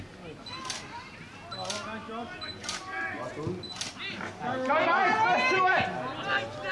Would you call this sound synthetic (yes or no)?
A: no